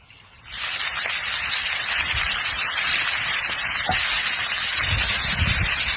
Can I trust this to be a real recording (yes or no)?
no